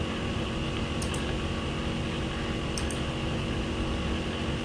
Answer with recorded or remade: recorded